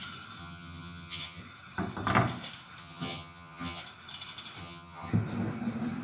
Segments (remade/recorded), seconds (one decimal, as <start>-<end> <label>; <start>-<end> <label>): 0.0-0.4 recorded; 0.4-1.4 remade; 1.4-2.8 recorded; 2.8-3.8 remade; 3.8-4.6 recorded; 4.6-5.1 remade; 5.1-6.0 recorded

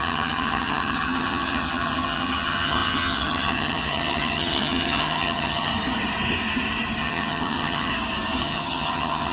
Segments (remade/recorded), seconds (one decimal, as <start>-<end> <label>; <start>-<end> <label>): 0.0-5.7 remade; 5.7-7.0 recorded; 7.0-7.9 remade; 7.9-8.4 recorded; 8.4-9.3 remade

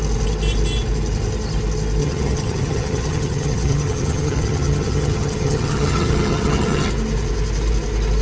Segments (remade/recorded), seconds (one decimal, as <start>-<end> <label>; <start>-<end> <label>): 0.0-2.0 recorded; 2.0-6.9 remade; 6.9-8.2 recorded